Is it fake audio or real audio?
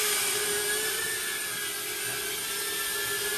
real